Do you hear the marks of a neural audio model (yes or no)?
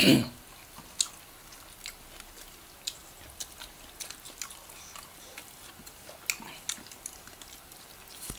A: no